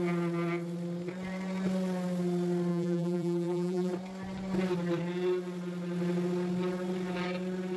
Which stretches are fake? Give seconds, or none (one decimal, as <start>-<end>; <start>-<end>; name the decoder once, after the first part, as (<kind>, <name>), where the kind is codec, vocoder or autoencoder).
2.7-3.9 (vocoder, BigVGAN v2)